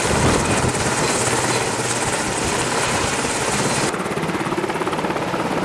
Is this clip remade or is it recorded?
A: recorded